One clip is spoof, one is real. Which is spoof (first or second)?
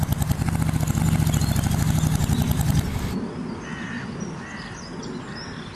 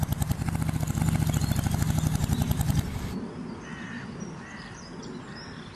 second